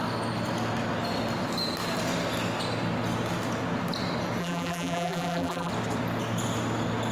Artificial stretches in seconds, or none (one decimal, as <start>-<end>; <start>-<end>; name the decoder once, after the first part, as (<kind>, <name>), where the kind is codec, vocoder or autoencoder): 4.4-5.7 (vocoder, BigVGAN v2)